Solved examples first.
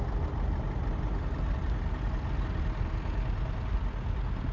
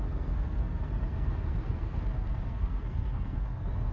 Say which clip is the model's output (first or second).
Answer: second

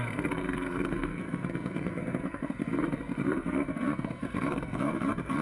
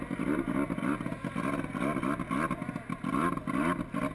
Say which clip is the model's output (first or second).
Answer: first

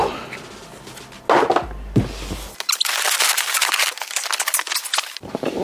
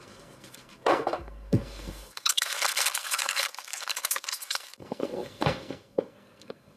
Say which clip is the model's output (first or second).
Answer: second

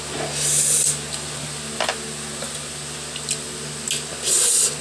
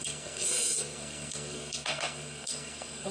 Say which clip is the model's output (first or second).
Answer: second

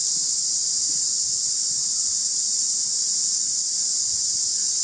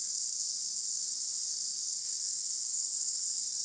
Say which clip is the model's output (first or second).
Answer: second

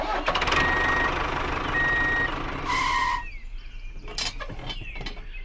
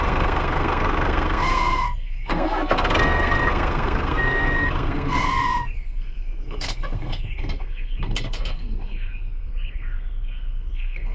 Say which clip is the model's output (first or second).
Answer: second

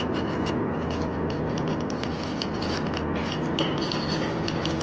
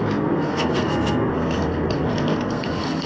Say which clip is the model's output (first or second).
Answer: second